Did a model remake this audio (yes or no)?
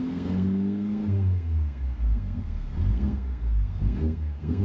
yes